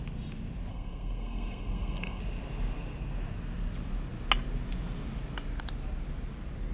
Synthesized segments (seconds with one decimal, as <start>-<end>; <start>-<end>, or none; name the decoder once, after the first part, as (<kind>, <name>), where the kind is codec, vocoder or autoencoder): 0.7-2.2 (codec, SNAC)